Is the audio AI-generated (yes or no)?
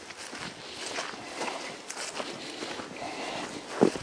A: no